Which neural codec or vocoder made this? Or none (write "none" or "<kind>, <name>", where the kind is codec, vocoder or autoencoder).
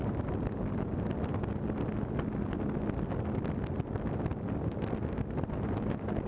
none